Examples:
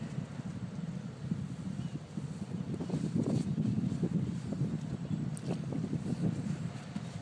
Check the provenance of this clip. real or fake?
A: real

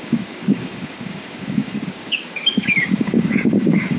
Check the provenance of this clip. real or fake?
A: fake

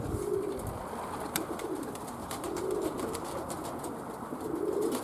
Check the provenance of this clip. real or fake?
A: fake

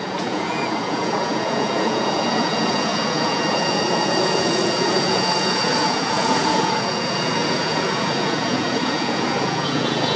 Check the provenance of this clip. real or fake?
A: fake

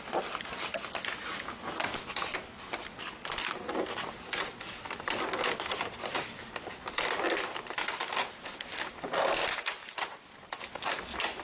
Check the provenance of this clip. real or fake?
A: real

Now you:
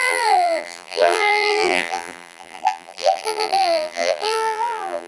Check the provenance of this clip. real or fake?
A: fake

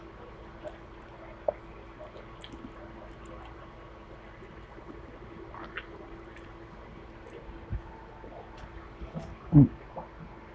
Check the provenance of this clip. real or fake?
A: real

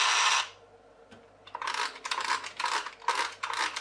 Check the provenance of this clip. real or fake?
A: real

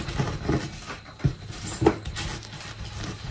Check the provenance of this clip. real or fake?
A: real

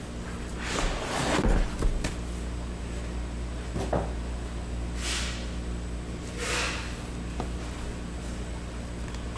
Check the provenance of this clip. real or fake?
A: real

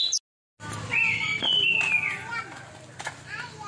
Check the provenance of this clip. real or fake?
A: real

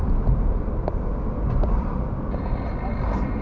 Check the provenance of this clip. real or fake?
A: real